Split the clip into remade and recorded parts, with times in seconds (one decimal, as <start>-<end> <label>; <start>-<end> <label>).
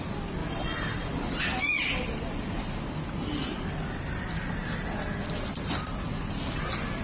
0.0-7.0 recorded